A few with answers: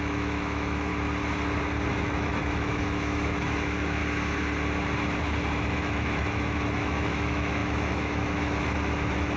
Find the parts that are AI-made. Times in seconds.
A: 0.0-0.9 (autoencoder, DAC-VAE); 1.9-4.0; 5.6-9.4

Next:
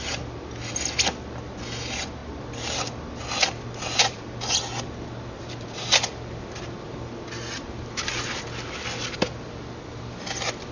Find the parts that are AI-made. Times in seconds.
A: none

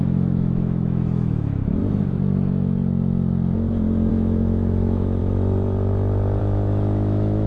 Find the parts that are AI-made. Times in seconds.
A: 0.0-1.8 (autoencoder, DAC-VAE); 4.1-5.2; 6.4-7.5

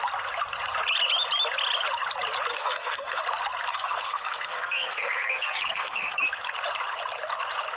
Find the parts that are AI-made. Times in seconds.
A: 2.5-3.2 (codec, SNAC); 3.7-6.2